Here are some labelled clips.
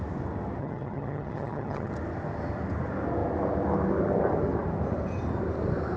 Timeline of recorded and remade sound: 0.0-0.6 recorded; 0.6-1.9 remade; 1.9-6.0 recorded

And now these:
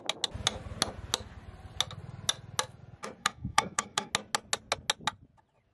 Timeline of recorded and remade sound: 0.0-3.2 recorded; 3.2-4.1 remade; 4.1-5.7 recorded

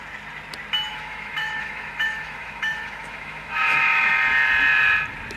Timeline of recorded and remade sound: 0.0-0.9 recorded; 0.9-4.1 remade; 4.1-5.4 recorded

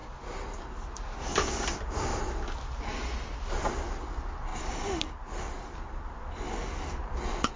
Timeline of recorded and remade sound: 0.0-7.6 recorded

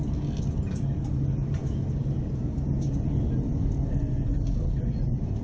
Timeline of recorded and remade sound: 0.0-5.4 recorded

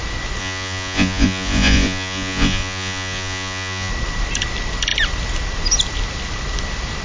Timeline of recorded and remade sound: 0.0-0.4 recorded; 0.4-3.9 remade; 3.9-7.0 recorded

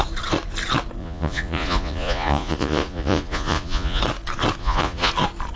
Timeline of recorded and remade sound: 0.0-1.0 recorded; 1.0-4.0 remade; 4.0-4.6 recorded; 4.6-5.1 remade; 5.1-5.6 recorded